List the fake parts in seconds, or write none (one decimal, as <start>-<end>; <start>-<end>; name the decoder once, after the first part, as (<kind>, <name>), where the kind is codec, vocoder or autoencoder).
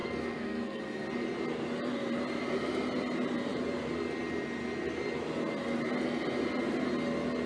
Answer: 0.0-0.8 (codec, SNAC)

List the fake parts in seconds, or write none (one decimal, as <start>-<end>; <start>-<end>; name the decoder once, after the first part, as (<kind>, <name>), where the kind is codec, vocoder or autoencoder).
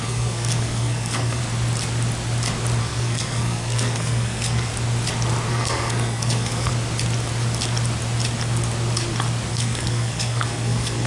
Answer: 0.0-1.4 (codec, SNAC); 2.8-4.7; 5.5-6.7; 9.5-11.1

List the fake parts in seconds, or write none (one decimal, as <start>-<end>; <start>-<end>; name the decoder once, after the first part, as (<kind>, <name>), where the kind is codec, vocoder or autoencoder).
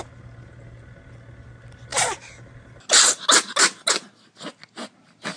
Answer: none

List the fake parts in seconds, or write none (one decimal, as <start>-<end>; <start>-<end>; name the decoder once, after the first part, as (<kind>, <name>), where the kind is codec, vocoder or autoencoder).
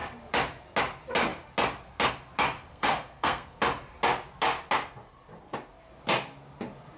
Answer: 2.7-3.6 (codec, SNAC)